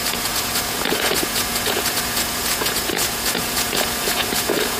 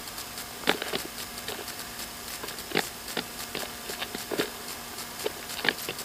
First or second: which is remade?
first